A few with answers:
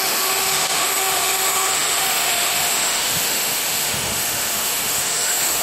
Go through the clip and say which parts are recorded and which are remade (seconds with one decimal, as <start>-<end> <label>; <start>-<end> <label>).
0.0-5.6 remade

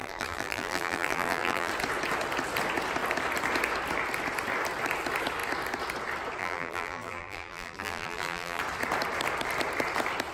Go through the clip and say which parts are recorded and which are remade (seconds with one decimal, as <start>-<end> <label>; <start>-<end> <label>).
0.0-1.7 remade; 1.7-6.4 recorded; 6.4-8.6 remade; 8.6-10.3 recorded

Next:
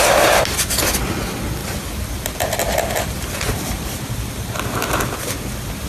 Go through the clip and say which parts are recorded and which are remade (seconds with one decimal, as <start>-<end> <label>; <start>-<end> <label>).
0.0-1.6 recorded; 1.6-5.1 remade; 5.1-5.9 recorded

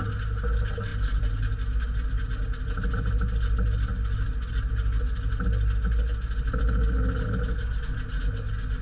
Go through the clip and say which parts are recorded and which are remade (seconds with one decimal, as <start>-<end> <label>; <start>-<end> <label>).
0.0-8.8 recorded